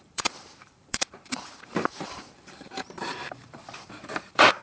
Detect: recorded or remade remade